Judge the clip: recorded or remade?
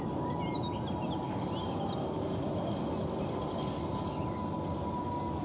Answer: recorded